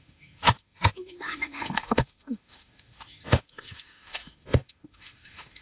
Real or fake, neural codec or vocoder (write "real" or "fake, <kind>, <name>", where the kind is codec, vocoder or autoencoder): fake, autoencoder, DAC-VAE